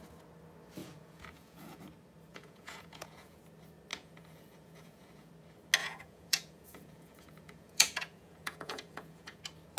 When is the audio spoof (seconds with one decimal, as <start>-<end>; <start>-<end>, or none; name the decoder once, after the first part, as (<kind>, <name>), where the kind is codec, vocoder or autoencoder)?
0.8-1.8 (vocoder, Vocos); 2.3-3.4; 3.9-5.3; 5.8-9.4